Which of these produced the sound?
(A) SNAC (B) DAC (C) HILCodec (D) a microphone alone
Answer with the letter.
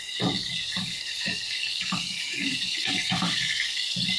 B